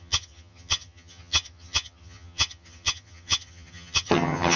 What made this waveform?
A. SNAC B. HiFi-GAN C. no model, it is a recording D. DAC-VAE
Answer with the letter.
B